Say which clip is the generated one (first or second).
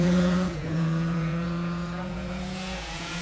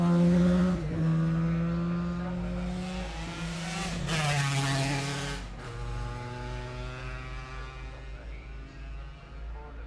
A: first